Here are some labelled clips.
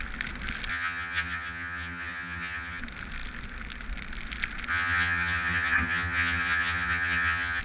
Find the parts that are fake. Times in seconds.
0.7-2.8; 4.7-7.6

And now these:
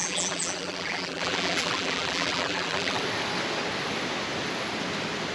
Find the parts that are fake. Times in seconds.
0.0-3.0

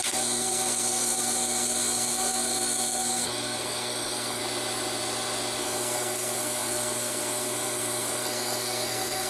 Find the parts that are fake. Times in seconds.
0.0-4.4; 5.6-9.3

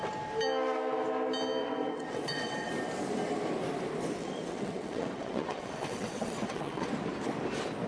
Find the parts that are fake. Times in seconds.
1.6-2.7; 4.2-6.9

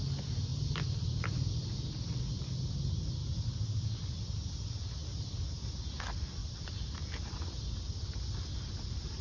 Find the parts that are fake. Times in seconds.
0.5-2.3; 3.2-4.2; 5.0-5.7; 6.4-7.6

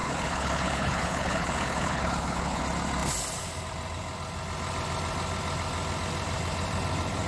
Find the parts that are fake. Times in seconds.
0.0-2.6

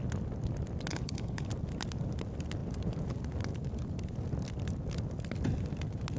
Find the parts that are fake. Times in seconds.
0.9-1.5

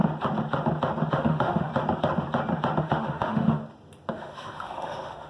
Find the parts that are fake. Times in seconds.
1.1-1.7; 2.8-3.6; 4.1-5.3